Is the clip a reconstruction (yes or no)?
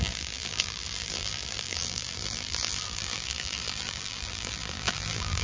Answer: yes